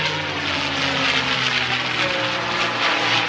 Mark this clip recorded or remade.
recorded